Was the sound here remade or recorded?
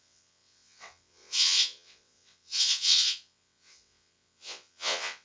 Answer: remade